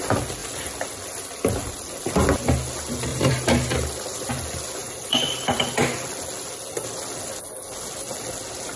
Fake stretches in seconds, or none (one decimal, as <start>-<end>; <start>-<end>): 3.1-4.3; 4.8-5.9